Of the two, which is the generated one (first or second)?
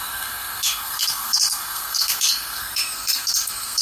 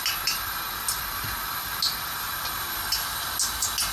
first